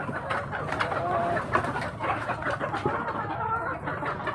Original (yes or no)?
yes